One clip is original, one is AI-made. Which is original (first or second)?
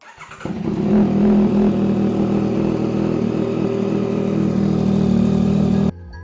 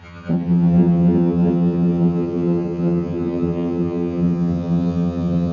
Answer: first